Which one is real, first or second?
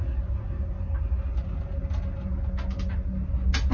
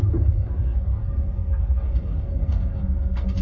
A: first